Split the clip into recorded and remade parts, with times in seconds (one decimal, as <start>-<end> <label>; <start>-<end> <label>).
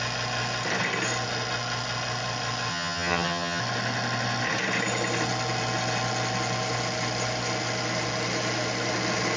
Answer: 0.0-2.7 recorded; 2.7-3.6 remade; 3.6-9.4 recorded